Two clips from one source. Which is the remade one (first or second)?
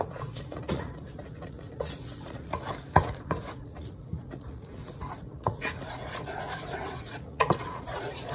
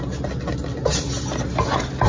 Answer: first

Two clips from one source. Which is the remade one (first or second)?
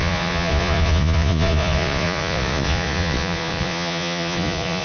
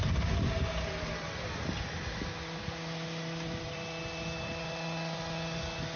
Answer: first